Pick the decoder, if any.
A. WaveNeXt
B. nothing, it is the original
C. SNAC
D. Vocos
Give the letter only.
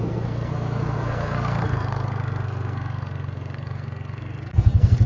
C